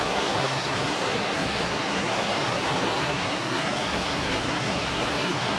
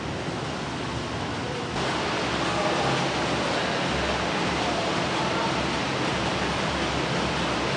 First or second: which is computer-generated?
first